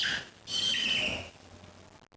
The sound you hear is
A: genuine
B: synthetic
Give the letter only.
A